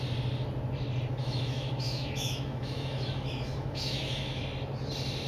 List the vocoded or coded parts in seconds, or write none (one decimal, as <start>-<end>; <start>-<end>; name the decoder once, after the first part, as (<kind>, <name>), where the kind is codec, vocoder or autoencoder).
1.2-4.4 (autoencoder, DAC-VAE)